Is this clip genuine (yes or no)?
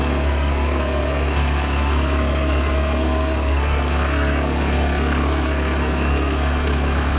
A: no